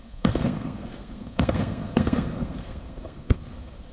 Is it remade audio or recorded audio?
remade